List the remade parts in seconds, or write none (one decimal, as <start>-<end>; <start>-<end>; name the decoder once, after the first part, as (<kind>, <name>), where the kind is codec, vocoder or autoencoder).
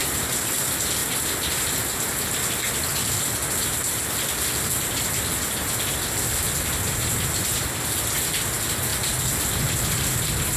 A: none